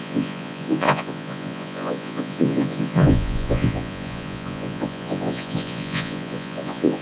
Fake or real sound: fake